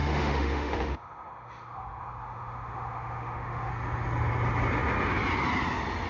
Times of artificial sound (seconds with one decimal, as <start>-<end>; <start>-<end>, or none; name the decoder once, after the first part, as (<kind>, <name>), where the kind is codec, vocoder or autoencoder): 0.0-3.7 (autoencoder, DAC-VAE)